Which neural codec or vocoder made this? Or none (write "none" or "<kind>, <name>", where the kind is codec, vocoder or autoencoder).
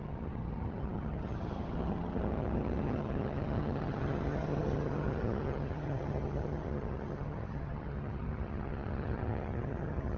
vocoder, HiFi-GAN